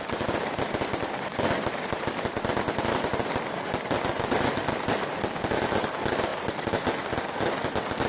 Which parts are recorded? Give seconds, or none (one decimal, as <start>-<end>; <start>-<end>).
1.3-4.1; 6.3-7.4